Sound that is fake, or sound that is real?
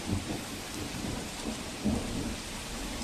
fake